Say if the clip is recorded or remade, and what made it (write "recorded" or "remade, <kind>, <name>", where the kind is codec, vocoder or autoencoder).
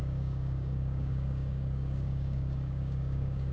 remade, codec, DAC